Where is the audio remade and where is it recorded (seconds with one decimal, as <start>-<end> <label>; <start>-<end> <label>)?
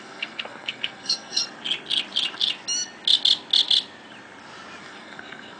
0.0-1.4 remade; 1.4-4.8 recorded; 4.8-5.6 remade